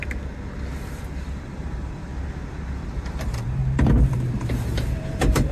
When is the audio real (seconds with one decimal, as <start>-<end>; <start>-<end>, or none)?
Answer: 0.0-1.2; 2.1-2.8; 3.6-4.1